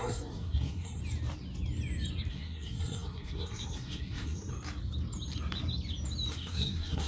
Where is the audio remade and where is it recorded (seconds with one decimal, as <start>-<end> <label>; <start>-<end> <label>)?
0.0-1.0 remade; 1.0-2.3 recorded; 2.3-4.5 remade; 4.5-6.3 recorded; 6.3-7.1 remade